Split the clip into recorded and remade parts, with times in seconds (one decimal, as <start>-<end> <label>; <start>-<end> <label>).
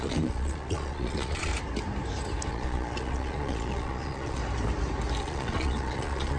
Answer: 0.0-1.5 remade; 1.5-2.5 recorded; 2.5-4.4 remade; 4.4-5.2 recorded; 5.2-6.4 remade